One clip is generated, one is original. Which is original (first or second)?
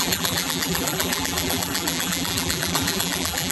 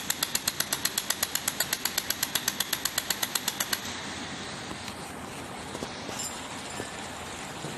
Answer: second